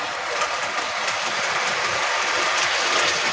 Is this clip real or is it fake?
real